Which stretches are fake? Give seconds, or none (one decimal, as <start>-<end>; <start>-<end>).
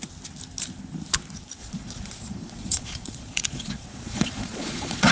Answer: 1.6-5.1